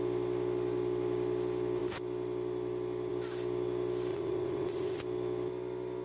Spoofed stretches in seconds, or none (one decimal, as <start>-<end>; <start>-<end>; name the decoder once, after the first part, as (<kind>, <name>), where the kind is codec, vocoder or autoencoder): 4.1-5.0 (vocoder, WaveNeXt)